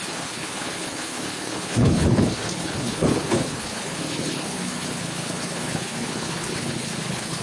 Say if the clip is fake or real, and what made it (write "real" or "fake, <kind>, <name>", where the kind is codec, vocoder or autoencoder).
fake, codec, HILCodec